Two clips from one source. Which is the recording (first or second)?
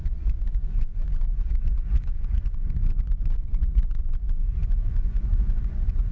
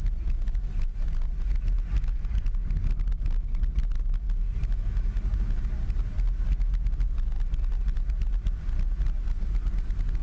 second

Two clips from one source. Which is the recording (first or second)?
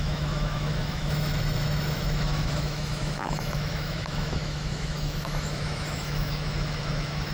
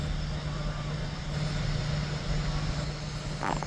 second